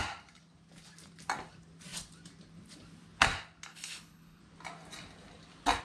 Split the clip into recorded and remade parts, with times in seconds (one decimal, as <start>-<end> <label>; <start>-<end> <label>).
0.0-3.7 recorded; 3.7-4.4 remade; 4.4-5.8 recorded